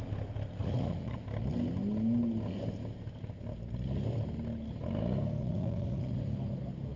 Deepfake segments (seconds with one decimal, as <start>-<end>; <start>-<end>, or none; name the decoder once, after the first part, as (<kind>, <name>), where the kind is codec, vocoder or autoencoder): 0.6-1.2 (vocoder, Vocos); 5.4-6.2

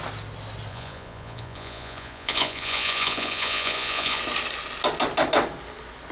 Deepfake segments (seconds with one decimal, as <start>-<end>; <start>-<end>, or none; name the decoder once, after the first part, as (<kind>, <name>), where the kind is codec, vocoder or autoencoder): 0.7-4.2 (vocoder, Vocos)

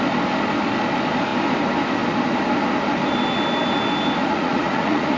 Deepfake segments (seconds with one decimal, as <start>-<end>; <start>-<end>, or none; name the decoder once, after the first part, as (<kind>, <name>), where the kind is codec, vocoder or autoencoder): 4.2-5.2 (vocoder, Vocos)